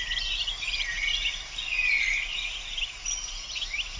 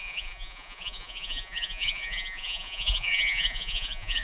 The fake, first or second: second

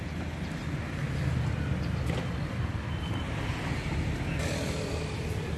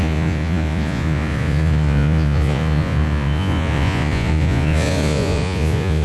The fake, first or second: second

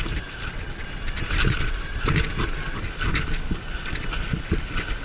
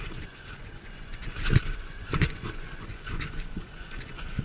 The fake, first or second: second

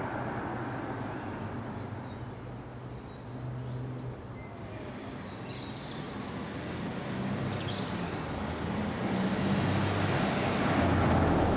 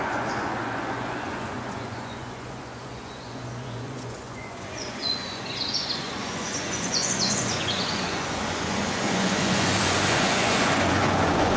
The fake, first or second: second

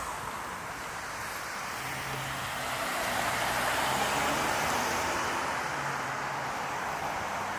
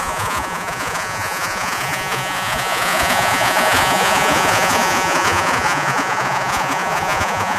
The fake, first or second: second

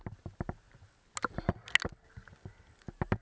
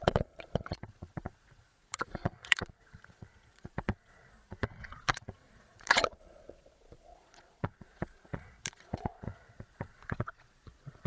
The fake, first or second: second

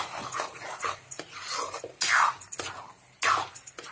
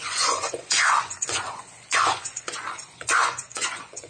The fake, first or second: second